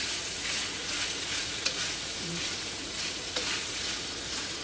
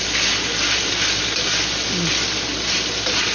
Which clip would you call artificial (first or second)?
first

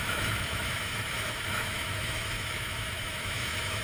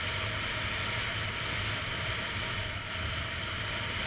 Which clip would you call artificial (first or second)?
first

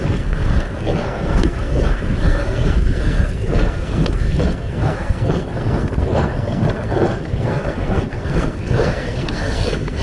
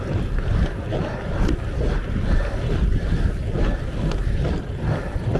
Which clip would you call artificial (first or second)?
first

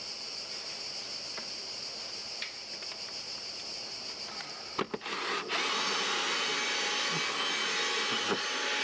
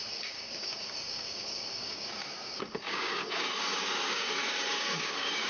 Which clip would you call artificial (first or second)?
second